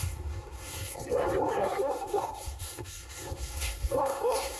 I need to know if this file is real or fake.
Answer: fake